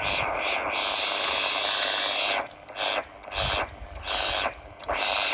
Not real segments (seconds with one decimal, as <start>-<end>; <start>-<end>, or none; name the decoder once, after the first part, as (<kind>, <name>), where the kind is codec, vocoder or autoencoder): 0.0-0.6 (vocoder, BigVGAN v2); 3.8-5.3